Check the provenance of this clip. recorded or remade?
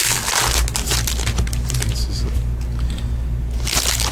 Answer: recorded